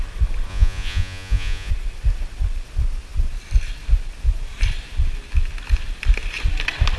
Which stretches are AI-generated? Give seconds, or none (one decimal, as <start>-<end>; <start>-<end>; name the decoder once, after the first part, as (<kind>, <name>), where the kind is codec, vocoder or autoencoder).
0.5-1.7 (vocoder, Vocos)

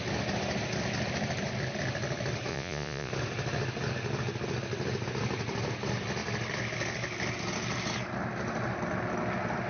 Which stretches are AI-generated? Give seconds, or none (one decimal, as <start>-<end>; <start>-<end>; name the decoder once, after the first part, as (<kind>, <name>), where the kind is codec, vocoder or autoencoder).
2.5-3.1 (vocoder, Vocos)

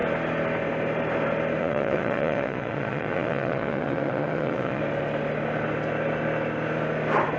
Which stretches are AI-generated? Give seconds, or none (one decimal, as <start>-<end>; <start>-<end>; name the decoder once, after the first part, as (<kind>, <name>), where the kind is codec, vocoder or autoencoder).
1.6-4.8 (vocoder, Vocos)

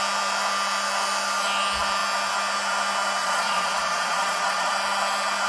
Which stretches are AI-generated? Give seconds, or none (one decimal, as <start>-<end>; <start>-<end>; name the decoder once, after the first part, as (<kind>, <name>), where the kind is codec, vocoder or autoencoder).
3.2-4.7 (vocoder, Vocos)